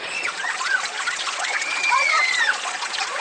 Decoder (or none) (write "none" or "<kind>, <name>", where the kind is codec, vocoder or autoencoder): vocoder, Vocos